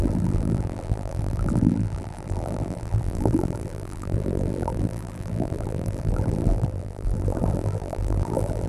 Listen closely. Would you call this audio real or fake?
fake